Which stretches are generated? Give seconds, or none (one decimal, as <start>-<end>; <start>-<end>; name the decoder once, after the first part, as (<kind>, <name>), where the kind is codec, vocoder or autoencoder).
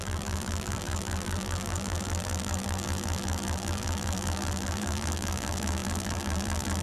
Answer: 0.0-6.8 (vocoder, BigVGAN v2)